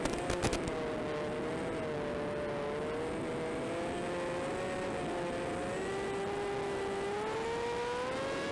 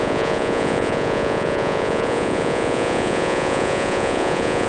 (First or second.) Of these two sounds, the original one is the first